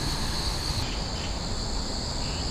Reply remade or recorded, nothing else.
recorded